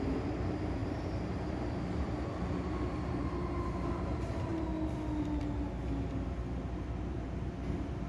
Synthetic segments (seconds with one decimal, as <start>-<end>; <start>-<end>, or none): 0.8-1.8